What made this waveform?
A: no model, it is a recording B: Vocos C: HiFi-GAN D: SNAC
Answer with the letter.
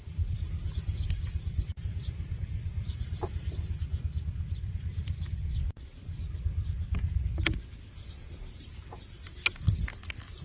A